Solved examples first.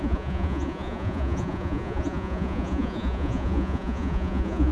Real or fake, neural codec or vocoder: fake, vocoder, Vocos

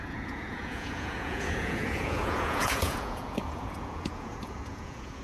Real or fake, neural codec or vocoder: fake, vocoder, Vocos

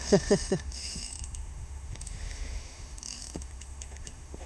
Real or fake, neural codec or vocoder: fake, autoencoder, DAC-VAE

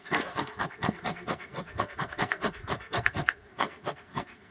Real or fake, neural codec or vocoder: fake, codec, SNAC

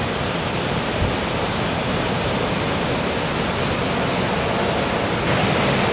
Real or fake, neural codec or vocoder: real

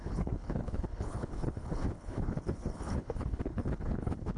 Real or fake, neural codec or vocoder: fake, codec, HILCodec